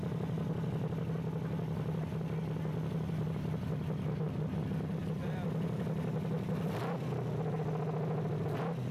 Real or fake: real